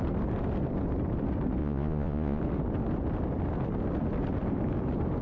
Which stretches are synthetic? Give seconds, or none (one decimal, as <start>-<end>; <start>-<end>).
1.6-2.4

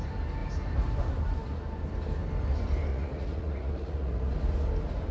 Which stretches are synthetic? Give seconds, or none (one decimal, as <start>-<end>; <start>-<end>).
2.9-4.3

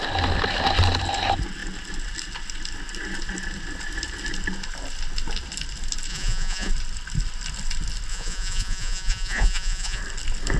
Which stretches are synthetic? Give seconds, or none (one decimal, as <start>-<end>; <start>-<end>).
6.1-6.7; 8.1-10.0

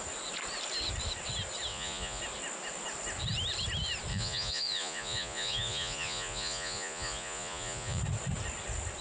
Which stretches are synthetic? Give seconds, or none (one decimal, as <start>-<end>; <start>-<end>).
1.7-2.2; 4.1-8.0

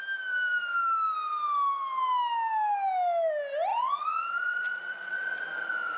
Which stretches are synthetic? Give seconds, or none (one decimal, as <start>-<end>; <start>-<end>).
3.7-5.4

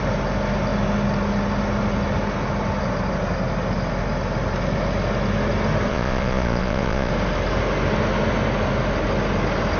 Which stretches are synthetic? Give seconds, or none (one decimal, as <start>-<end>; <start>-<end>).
5.9-7.1